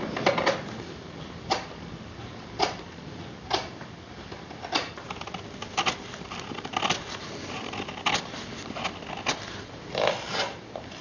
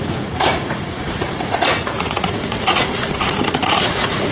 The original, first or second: first